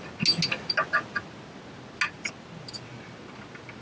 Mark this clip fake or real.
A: real